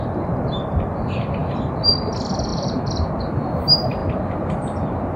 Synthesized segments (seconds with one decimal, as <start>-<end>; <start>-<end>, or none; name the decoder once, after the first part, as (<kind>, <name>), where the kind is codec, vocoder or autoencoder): 2.5-3.4 (vocoder, BigVGAN v2); 4.0-5.2